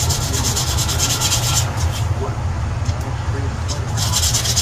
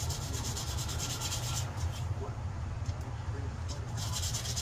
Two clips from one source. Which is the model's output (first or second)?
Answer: second